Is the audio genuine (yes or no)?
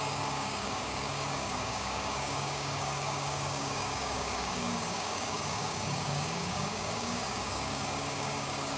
no